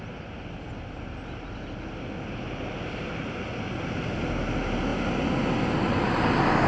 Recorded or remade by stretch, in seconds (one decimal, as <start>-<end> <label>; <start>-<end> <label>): 0.0-6.7 recorded